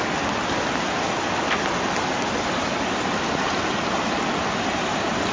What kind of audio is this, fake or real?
real